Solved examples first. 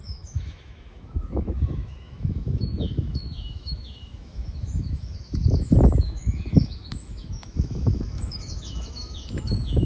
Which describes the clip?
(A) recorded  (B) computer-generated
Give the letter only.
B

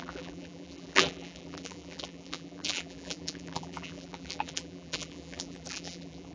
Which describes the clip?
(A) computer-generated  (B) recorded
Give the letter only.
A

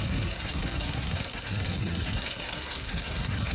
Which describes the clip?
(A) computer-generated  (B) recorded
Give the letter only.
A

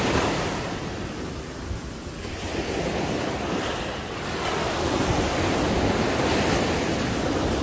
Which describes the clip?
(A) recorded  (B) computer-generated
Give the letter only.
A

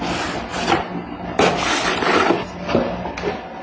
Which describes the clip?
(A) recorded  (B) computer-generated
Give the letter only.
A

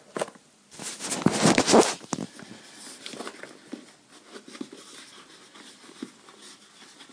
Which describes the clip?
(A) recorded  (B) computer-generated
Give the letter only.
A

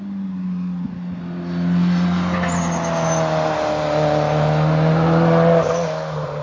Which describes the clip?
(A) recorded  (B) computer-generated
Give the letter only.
A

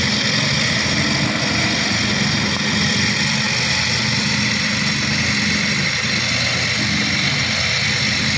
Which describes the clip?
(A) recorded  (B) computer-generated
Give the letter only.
A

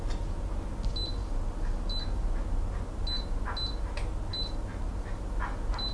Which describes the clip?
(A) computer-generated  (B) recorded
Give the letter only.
B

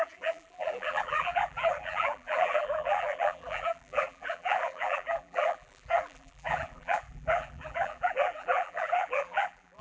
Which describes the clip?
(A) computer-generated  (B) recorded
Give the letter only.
A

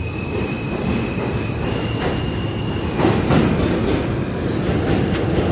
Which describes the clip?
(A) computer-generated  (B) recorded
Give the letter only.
B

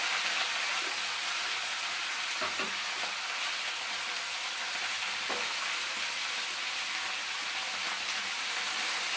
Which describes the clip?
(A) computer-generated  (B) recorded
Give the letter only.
B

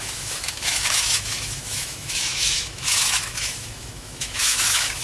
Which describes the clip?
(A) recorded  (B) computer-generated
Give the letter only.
B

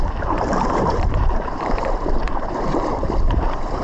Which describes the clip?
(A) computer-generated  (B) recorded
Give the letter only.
A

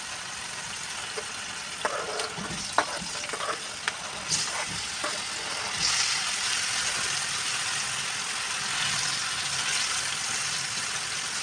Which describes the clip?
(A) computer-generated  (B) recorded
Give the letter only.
B